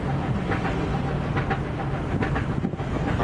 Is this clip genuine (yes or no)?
yes